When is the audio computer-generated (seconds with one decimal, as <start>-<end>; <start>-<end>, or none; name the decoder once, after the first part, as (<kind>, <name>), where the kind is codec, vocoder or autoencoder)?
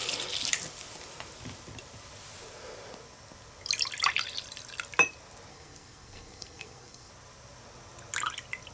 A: 5.5-7.1 (codec, SNAC)